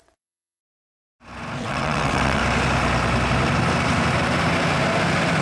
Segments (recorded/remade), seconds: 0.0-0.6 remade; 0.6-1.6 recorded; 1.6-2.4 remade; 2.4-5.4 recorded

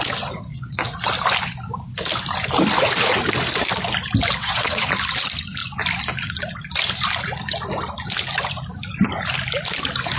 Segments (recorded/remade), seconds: 0.0-0.5 recorded; 0.5-1.1 remade; 1.1-4.4 recorded; 4.4-4.9 remade; 4.9-10.2 recorded

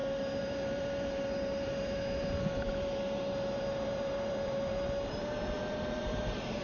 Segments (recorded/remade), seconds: 0.0-6.6 remade

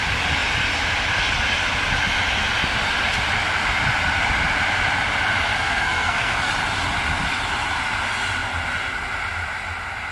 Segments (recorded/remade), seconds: 0.0-5.5 recorded; 5.5-6.5 remade; 6.5-10.1 recorded

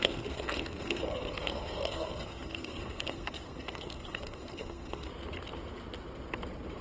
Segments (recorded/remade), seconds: 0.0-5.1 remade; 5.1-6.8 recorded